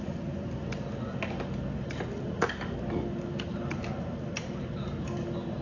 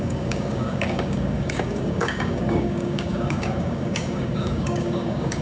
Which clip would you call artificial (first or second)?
second